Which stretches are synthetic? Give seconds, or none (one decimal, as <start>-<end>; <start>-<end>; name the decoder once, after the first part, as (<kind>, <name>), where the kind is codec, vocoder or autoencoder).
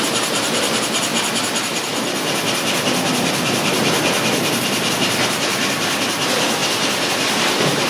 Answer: 0.0-1.1 (vocoder, BigVGAN v2); 4.9-6.6; 7.1-7.9